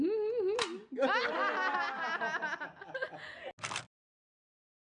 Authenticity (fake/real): real